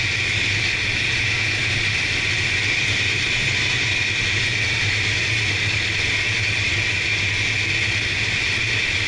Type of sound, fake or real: real